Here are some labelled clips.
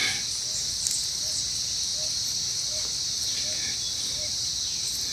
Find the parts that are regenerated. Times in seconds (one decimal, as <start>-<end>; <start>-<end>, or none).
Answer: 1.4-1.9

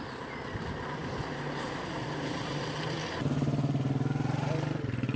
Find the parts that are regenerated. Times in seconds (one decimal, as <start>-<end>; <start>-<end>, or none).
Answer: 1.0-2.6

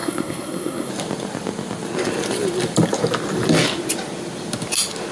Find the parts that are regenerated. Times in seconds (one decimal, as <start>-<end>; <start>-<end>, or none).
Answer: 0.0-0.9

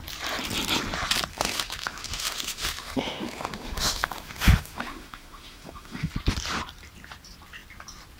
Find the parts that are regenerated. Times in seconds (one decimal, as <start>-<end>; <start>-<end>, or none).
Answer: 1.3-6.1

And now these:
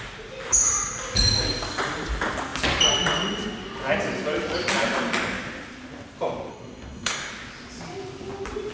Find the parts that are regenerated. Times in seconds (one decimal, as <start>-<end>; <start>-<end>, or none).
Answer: 6.5-7.3